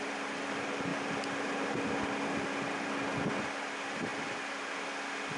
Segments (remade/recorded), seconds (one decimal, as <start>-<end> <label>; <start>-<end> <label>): 0.0-5.4 recorded

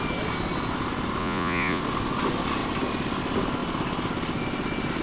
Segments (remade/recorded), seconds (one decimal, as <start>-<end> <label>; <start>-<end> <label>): 0.0-1.2 recorded; 1.2-1.8 remade; 1.8-5.0 recorded